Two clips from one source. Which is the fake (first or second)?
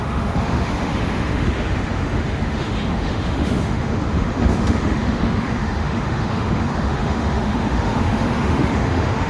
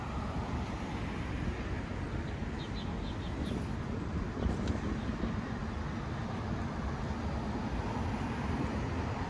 first